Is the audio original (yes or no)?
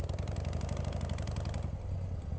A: yes